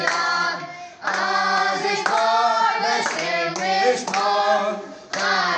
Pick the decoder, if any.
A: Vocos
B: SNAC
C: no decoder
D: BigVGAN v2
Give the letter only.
C